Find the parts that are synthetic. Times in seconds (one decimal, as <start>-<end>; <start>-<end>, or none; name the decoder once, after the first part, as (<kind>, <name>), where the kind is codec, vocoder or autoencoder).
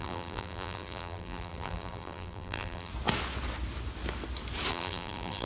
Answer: 0.0-2.9 (vocoder, BigVGAN v2); 4.7-5.5